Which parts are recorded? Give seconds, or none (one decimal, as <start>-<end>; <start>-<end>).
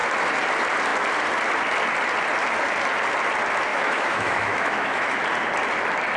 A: 0.0-3.7; 5.2-6.2